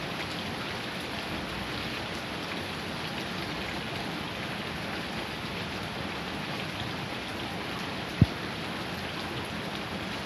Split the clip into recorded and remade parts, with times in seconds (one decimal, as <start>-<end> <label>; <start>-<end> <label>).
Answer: 0.0-10.3 recorded